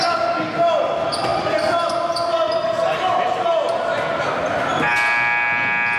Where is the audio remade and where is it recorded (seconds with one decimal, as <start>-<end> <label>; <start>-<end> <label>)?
0.0-6.0 recorded